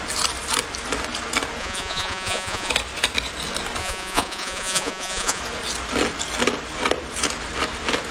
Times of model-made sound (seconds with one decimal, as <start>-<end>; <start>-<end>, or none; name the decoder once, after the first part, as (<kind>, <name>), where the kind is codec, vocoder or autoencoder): 1.6-2.7 (vocoder, Vocos); 3.8-5.4